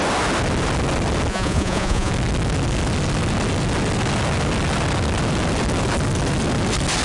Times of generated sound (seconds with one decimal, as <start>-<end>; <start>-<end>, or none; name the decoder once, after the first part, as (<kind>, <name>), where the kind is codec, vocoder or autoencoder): 1.3-2.1 (vocoder, Vocos)